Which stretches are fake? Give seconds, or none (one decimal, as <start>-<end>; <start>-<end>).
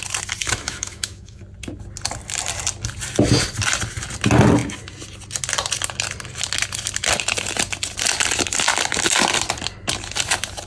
0.4-1.4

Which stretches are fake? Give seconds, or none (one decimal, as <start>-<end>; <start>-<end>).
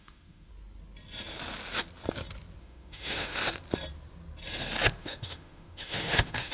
0.0-0.5; 2.6-3.4; 5.0-6.5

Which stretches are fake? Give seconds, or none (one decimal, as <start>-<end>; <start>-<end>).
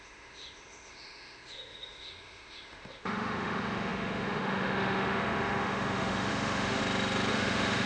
0.0-6.8; 7.3-7.9